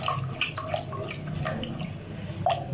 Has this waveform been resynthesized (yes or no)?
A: no